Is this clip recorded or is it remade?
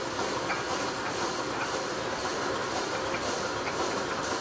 recorded